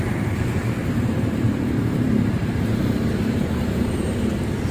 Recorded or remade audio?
remade